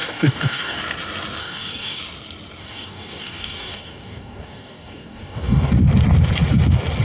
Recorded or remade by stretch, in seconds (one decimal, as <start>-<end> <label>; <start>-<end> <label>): 0.0-0.8 remade; 0.8-1.4 recorded; 1.4-2.0 remade; 2.0-2.6 recorded; 2.6-5.7 remade; 5.7-7.0 recorded